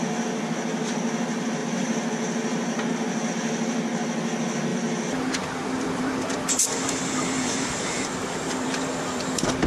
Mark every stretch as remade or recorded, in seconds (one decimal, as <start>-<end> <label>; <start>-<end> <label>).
0.0-4.7 recorded; 4.7-9.7 remade